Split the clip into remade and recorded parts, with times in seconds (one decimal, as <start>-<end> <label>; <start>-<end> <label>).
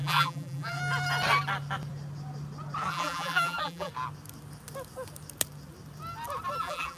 0.0-0.8 remade; 0.8-2.9 recorded; 2.9-3.9 remade; 3.9-6.6 recorded; 6.6-7.0 remade